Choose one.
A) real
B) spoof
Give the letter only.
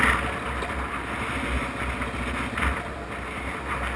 A